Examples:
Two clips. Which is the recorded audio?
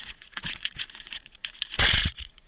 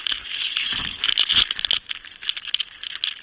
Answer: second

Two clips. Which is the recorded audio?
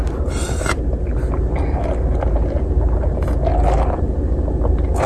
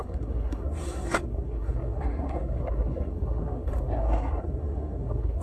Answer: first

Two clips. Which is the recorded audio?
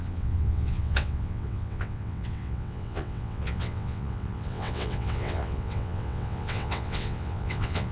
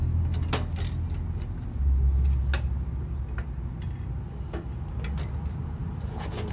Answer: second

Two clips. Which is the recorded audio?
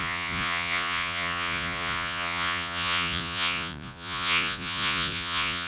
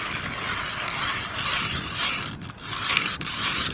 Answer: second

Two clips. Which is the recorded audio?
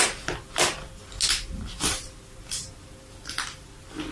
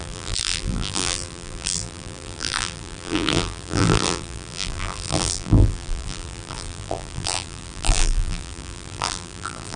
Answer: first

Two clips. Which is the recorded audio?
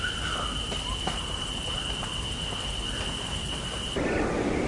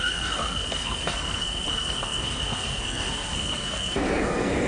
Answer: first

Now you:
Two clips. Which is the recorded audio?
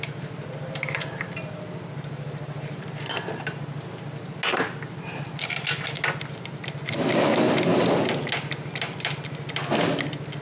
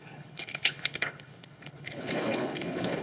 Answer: first